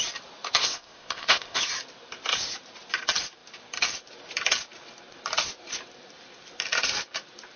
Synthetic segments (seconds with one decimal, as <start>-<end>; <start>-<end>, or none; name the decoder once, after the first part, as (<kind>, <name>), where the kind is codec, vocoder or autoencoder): 0.6-1.6 (codec, ZipCodec)